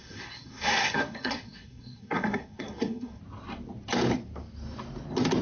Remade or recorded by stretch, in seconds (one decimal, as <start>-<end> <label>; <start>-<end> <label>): 0.0-3.2 remade; 3.2-5.4 recorded